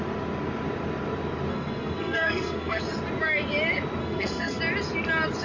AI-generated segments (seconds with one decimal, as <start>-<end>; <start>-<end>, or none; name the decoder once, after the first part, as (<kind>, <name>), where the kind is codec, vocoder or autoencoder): 1.5-2.8 (codec, SNAC); 4.0-4.6